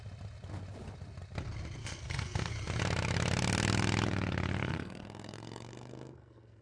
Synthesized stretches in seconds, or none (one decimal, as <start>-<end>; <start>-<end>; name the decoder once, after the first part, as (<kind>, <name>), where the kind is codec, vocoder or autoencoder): 1.8-2.5 (codec, SNAC); 4.6-6.6